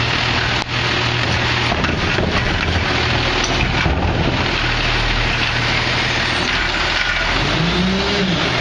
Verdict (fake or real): real